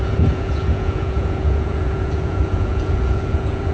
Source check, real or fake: fake